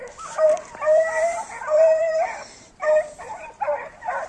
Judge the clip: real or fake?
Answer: fake